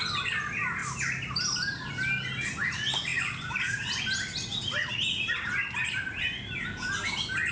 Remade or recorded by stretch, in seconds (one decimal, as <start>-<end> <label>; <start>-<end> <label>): 0.0-7.5 recorded